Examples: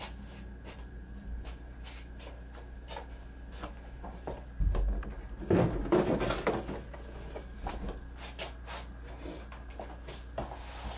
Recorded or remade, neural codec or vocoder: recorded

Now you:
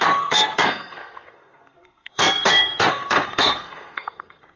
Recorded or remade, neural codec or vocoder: remade, codec, SNAC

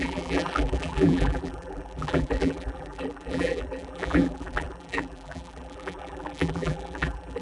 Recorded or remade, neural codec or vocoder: remade, vocoder, BigVGAN v2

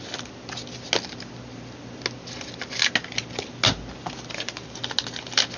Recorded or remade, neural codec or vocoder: recorded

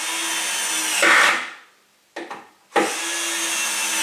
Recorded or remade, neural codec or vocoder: recorded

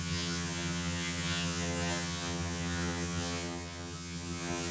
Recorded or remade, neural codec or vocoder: remade, vocoder, HiFi-GAN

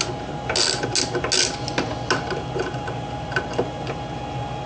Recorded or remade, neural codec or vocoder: recorded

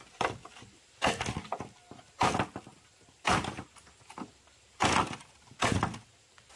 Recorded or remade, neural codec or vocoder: recorded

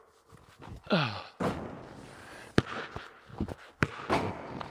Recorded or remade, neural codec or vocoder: recorded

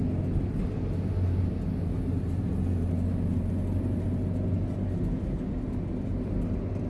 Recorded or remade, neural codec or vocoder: recorded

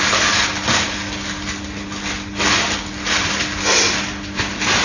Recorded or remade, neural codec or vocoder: recorded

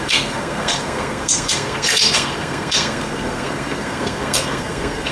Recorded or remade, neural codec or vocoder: remade, codec, SNAC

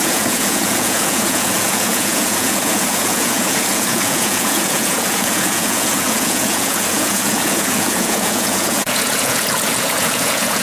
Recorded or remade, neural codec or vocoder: remade, vocoder, Vocos